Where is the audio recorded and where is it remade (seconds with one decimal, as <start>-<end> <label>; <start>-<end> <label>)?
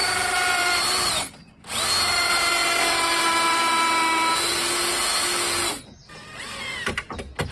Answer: 0.0-1.5 remade; 1.5-7.5 recorded